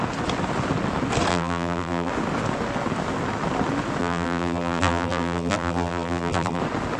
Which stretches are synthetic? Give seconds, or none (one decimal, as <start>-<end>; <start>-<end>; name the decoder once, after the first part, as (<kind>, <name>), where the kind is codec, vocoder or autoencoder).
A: 1.3-2.1 (vocoder, BigVGAN v2); 4.0-6.6